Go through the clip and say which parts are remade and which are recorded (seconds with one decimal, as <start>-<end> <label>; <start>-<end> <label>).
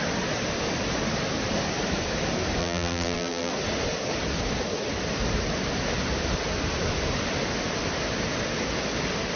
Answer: 0.0-2.6 recorded; 2.6-3.5 remade; 3.5-9.4 recorded